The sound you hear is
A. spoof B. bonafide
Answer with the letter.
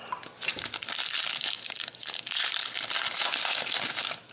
B